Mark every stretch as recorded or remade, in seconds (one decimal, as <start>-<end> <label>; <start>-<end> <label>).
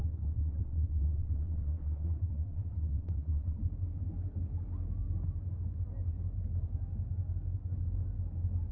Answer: 0.0-3.6 remade; 3.6-8.7 recorded